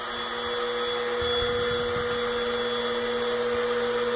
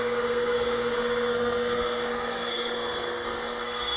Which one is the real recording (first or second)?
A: first